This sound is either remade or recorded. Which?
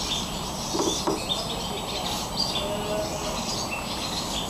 recorded